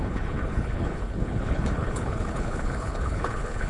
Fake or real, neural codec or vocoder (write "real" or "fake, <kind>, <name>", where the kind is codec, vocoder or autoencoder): fake, codec, HILCodec